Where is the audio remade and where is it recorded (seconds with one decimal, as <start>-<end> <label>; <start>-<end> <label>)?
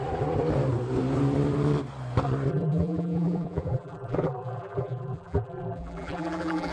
0.0-2.5 recorded; 2.5-6.7 remade